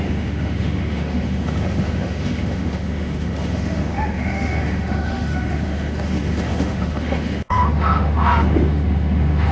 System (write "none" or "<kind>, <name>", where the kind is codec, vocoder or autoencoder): autoencoder, DAC-VAE